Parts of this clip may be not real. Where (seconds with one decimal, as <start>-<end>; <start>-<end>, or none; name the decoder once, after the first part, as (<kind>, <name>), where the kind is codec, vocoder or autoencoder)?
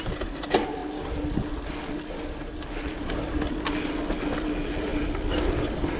none